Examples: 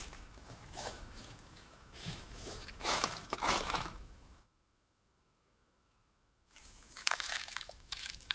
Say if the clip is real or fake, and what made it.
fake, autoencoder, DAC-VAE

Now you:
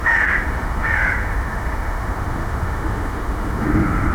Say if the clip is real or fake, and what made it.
fake, autoencoder, DAC-VAE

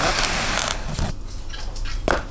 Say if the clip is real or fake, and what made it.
real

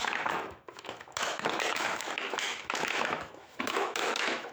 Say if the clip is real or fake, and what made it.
fake, autoencoder, DAC-VAE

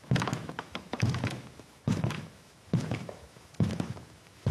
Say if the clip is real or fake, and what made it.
fake, autoencoder, DAC-VAE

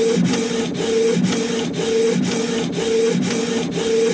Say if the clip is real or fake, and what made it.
real